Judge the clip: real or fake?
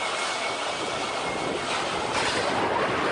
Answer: real